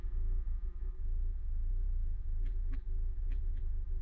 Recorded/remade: remade